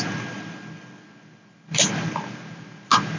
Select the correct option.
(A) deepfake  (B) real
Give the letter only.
B